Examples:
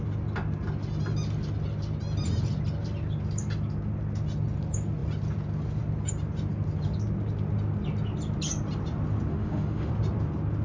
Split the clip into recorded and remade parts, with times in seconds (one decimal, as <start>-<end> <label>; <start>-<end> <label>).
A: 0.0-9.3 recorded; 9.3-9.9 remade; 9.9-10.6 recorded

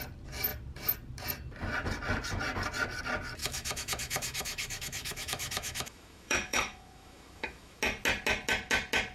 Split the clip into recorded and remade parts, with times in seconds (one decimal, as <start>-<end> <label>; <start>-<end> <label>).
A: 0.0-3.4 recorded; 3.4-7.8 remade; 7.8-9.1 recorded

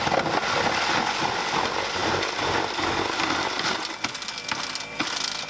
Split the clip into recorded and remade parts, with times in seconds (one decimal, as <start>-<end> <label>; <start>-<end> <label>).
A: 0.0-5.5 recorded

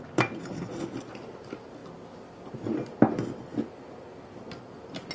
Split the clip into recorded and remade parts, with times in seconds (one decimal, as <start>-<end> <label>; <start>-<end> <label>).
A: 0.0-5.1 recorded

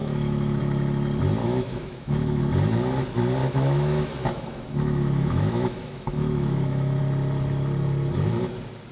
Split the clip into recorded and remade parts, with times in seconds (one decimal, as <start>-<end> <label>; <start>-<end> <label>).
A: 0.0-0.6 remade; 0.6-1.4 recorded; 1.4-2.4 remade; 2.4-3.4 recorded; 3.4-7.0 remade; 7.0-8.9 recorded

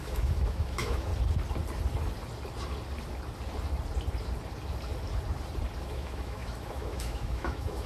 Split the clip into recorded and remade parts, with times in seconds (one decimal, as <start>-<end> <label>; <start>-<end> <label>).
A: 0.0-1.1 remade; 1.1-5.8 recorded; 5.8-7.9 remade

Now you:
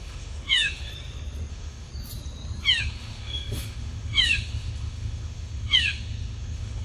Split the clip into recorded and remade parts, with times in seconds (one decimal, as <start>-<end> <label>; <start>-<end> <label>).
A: 0.0-0.9 remade; 0.9-1.5 recorded; 1.5-1.9 remade; 1.9-2.8 recorded; 2.8-6.8 remade